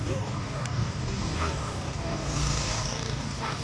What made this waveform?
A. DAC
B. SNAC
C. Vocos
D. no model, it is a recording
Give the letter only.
A